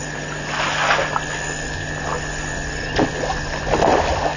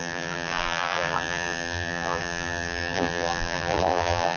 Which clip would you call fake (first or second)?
second